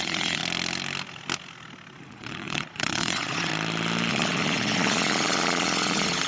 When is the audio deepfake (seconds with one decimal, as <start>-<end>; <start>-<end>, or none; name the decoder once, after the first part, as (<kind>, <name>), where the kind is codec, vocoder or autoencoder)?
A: 0.0-0.4 (vocoder, Vocos); 2.1-3.5; 4.1-6.3